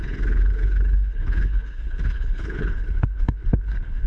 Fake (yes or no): yes